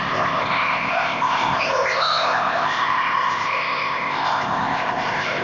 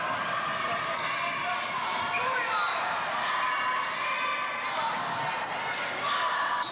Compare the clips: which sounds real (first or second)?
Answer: second